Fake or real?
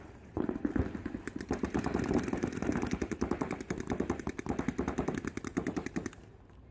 real